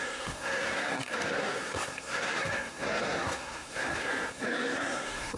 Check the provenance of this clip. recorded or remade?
remade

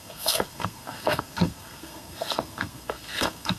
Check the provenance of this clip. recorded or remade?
remade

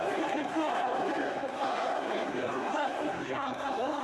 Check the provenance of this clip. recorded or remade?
remade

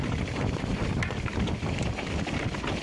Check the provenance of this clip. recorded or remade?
recorded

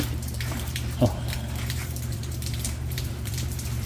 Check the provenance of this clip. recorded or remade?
remade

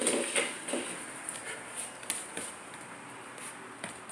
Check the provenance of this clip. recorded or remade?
recorded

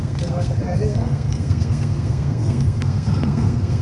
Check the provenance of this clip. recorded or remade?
remade